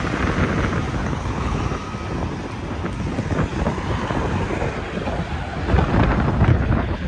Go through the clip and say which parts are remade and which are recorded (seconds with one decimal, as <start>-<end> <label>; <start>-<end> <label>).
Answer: 0.0-1.0 recorded; 1.0-1.6 remade; 1.6-6.5 recorded; 6.5-7.1 remade